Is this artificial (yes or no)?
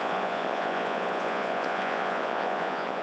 yes